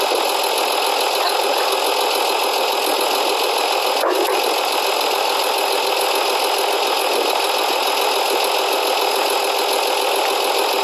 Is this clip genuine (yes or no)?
yes